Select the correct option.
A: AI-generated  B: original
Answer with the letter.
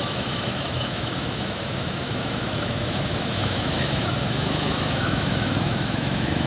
A